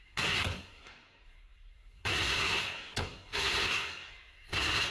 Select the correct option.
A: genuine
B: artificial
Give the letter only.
B